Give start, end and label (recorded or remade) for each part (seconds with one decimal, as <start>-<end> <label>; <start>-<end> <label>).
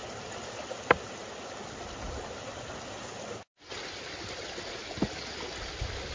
0.0-6.1 recorded